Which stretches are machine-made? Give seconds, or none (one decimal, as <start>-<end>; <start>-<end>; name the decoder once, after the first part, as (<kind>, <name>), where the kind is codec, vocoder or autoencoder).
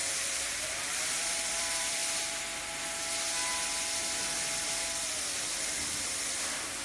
0.0-2.0 (vocoder, BigVGAN v2); 5.4-6.8